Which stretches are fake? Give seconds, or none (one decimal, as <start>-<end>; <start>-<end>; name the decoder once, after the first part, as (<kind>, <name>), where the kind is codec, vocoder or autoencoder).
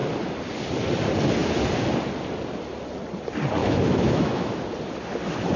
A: 3.6-4.6 (autoencoder, DAC-VAE)